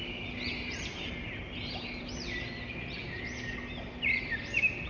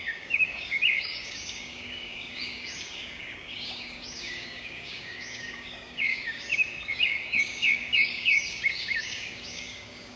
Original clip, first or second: first